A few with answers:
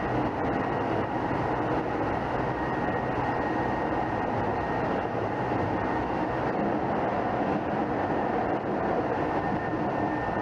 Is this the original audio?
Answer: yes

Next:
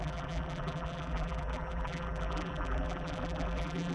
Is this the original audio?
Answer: no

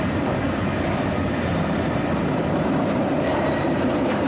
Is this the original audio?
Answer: no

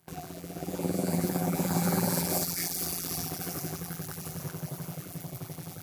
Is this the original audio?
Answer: no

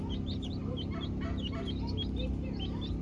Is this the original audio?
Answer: yes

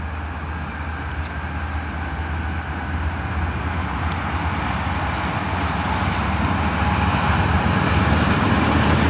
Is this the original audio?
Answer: yes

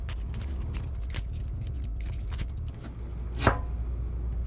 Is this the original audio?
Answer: yes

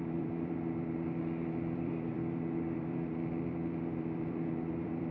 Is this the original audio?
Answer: no